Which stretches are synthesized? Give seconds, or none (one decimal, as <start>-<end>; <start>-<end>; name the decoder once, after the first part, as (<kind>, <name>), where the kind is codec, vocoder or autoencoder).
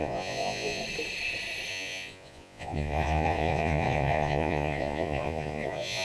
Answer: 0.0-0.8 (vocoder, Vocos); 1.7-6.0